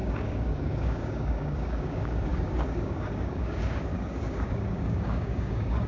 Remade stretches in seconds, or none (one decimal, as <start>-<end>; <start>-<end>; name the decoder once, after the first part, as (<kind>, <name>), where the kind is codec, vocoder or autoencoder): 0.0-5.9 (codec, DAC)